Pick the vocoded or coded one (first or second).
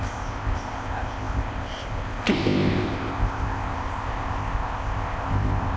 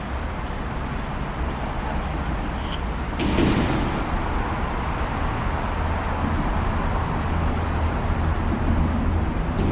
first